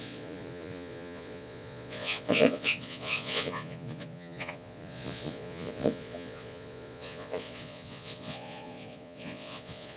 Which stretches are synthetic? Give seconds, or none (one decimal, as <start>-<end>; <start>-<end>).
0.0-10.0